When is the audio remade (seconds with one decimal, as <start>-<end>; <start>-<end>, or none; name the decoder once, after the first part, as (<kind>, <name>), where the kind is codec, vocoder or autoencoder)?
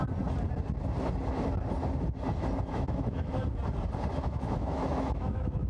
2.7-3.3 (autoencoder, DAC-VAE); 4.2-5.7